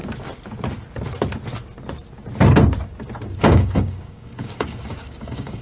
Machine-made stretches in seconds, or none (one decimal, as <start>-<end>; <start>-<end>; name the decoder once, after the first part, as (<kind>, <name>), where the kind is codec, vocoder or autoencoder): 3.4-5.6 (codec, DAC)